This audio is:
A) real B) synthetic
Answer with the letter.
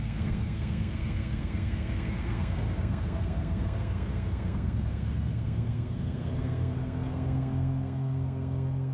B